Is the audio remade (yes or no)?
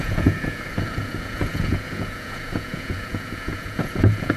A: yes